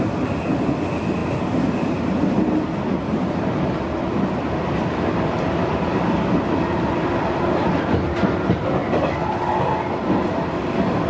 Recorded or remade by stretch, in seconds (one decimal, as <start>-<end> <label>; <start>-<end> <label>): 0.0-11.1 recorded